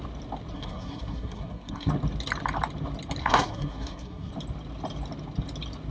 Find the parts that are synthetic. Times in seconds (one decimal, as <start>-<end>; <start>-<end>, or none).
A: 0.5-1.9; 3.2-4.3